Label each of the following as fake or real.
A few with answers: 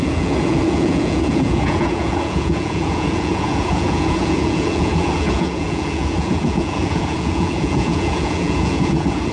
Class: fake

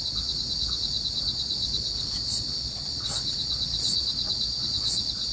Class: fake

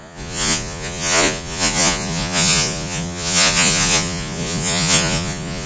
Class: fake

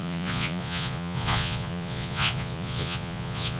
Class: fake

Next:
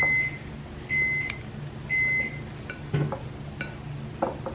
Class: real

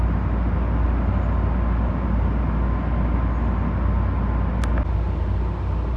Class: real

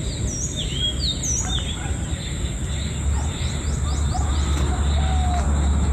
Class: real